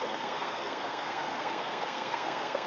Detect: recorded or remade remade